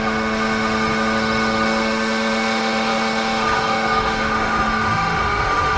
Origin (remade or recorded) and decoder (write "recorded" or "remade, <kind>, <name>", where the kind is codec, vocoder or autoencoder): remade, autoencoder, DAC-VAE